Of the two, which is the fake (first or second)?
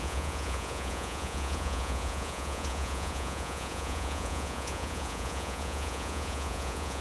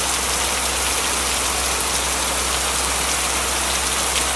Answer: first